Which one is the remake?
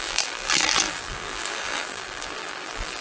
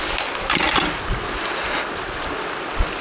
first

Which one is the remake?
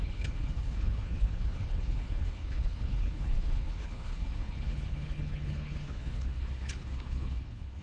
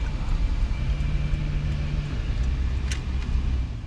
first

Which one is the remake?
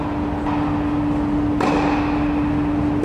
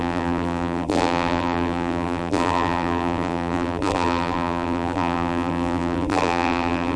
second